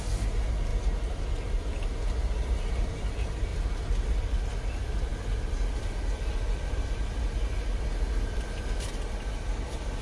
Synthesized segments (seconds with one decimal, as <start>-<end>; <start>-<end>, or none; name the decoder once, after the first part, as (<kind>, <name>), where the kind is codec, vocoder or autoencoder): none